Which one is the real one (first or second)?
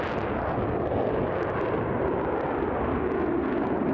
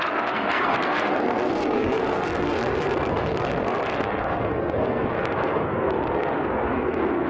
first